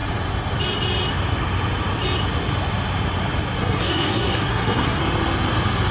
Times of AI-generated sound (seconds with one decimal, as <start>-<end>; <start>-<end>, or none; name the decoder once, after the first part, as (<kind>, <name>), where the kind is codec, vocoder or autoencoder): 3.6-5.0 (codec, SNAC)